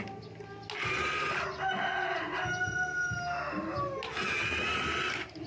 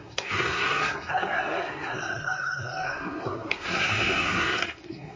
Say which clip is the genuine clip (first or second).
first